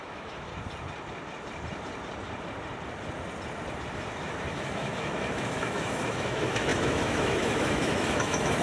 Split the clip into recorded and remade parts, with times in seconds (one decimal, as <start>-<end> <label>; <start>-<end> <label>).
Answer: 0.0-0.5 remade; 0.5-4.5 recorded; 4.5-8.6 remade